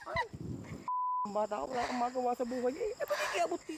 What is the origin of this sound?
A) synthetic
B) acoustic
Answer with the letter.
B